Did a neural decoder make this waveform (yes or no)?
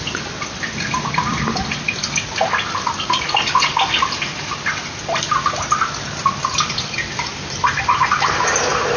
no